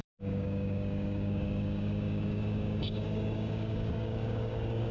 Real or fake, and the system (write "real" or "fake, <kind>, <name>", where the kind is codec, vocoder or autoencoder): fake, codec, DAC